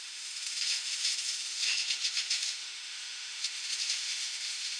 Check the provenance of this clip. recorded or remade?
remade